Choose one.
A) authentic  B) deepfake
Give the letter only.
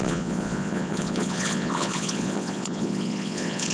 B